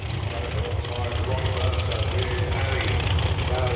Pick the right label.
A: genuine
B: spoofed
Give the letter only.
A